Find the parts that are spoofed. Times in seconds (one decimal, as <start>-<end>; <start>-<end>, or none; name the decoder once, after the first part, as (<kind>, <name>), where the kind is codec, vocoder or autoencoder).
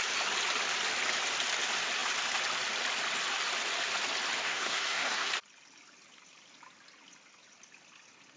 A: 4.4-5.3 (codec, SNAC)